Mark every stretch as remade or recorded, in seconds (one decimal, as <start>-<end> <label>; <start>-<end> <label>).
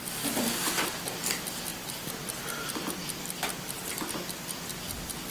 0.0-5.3 recorded